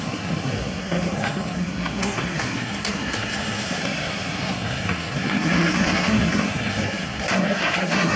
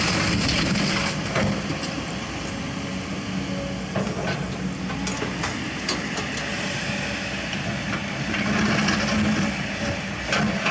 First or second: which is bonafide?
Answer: second